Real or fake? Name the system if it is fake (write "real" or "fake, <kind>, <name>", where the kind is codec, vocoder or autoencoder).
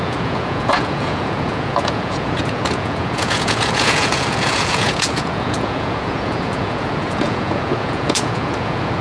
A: fake, vocoder, Vocos